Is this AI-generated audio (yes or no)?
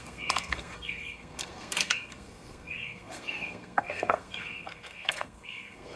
yes